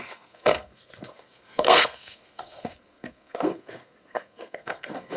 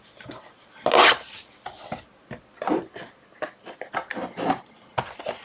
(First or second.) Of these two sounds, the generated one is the first